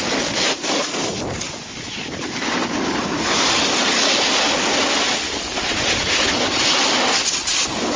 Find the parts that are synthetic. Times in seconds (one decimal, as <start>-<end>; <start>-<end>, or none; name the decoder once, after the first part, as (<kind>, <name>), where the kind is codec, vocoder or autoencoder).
none